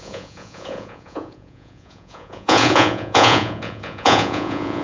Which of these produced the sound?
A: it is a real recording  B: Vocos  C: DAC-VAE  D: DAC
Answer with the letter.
B